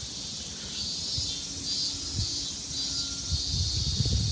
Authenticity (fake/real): real